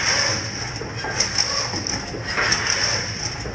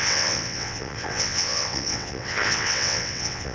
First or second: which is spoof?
second